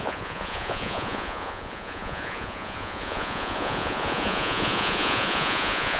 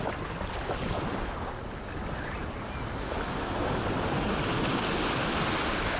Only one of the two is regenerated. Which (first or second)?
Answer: first